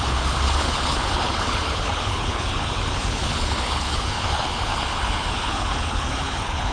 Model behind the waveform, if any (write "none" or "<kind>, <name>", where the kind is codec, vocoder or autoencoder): codec, HILCodec